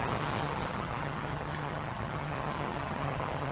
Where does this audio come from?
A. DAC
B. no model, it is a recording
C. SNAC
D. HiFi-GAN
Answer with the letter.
D